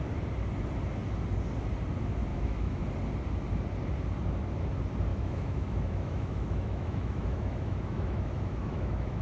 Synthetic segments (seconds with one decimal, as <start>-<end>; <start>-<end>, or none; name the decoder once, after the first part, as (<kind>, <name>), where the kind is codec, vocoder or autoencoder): 2.3-2.8 (autoencoder, DAC-VAE); 5.1-9.2